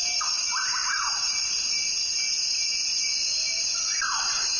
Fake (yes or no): no